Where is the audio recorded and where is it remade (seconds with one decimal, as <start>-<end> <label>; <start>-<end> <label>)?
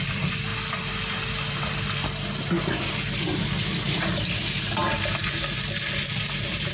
0.0-6.7 recorded